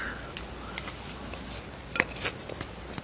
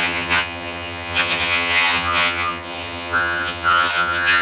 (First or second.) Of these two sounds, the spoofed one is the second